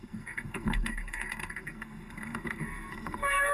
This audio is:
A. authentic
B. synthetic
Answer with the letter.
B